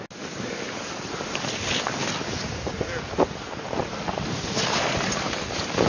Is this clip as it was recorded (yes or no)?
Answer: yes